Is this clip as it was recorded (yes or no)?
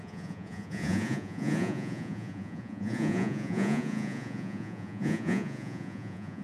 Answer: no